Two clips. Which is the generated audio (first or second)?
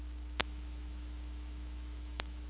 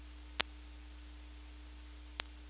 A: first